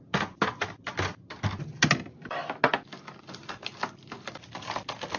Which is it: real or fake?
real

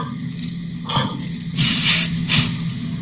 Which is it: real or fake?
real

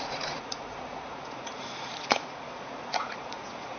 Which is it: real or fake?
fake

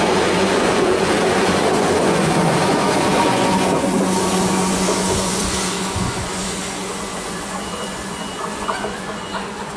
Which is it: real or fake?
fake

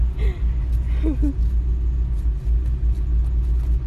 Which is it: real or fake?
real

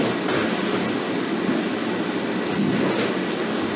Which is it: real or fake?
real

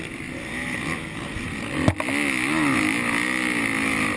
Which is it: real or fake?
real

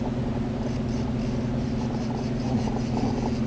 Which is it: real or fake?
real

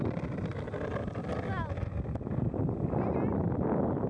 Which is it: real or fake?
real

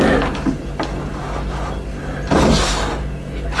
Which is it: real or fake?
real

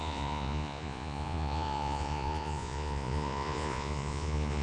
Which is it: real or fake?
fake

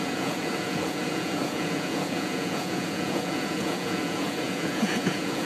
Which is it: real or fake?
fake